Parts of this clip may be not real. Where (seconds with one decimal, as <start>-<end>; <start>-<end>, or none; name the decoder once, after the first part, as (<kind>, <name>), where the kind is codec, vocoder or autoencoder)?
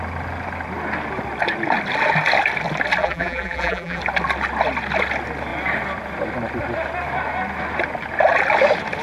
3.0-4.0 (vocoder, BigVGAN v2)